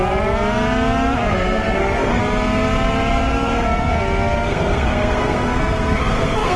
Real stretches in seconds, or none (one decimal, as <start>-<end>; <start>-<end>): 0.0-1.3; 2.2-3.1; 3.9-4.4